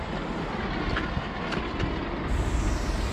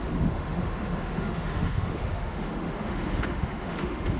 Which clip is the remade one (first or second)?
second